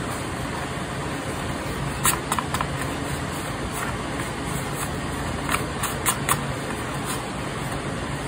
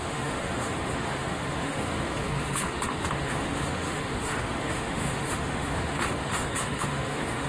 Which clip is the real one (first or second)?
first